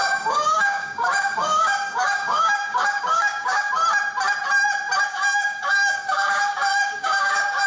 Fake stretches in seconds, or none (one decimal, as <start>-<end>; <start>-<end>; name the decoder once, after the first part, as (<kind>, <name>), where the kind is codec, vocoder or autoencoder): 0.0-3.7 (codec, DAC); 5.1-7.7